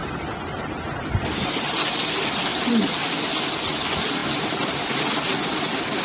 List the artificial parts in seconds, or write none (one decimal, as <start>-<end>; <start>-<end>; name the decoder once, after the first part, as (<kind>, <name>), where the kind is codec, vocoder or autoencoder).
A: none